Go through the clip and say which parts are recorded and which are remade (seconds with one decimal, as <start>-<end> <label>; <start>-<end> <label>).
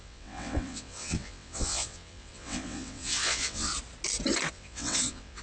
0.0-3.7 remade; 3.7-4.5 recorded; 4.5-5.4 remade